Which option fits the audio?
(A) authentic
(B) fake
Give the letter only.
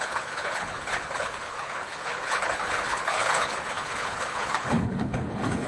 B